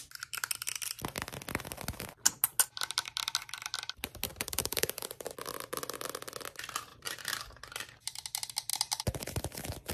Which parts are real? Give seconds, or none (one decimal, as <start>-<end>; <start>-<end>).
0.0-4.3; 5.3-6.9; 7.4-9.9